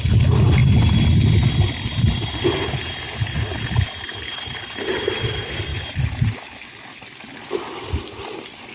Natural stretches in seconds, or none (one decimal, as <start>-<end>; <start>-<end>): 0.0-8.7